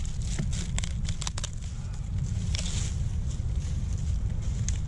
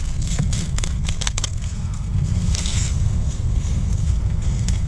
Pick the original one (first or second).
first